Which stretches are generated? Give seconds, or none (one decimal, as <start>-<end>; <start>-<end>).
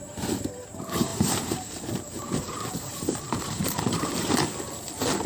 1.1-4.3